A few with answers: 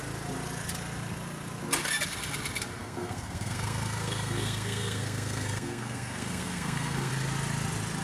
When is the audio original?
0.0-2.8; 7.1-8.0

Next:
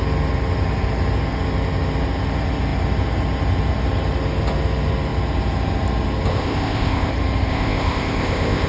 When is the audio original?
0.0-6.3; 7.1-7.5

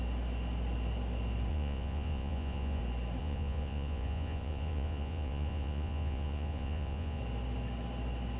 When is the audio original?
0.0-1.5; 2.8-3.2; 7.2-8.4

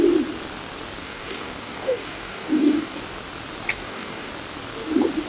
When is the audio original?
0.0-1.0; 3.0-3.7; 4.3-5.3

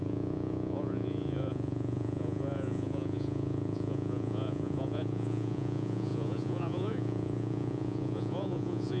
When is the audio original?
none